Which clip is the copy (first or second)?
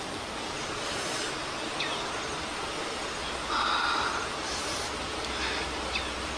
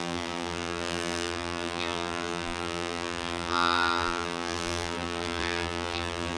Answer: second